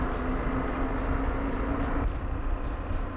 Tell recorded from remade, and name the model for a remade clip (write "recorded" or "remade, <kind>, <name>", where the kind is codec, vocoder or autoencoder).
recorded